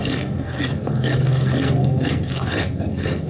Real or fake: fake